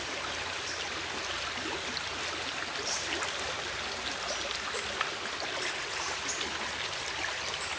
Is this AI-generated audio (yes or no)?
no